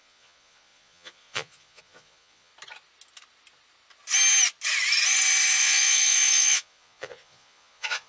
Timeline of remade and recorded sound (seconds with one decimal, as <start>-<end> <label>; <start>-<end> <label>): 0.0-2.5 remade; 2.5-5.6 recorded; 5.6-8.1 remade